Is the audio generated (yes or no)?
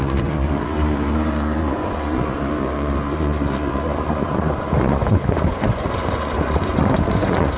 yes